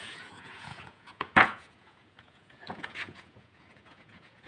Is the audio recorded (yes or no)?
no